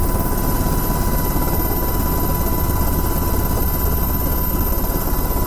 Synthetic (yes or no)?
no